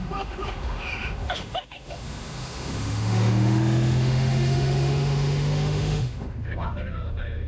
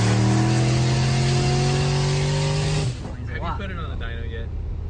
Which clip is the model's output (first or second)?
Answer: first